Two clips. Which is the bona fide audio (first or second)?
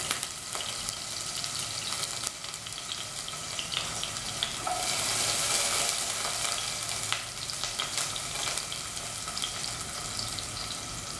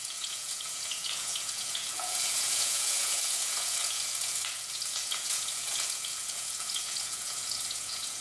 first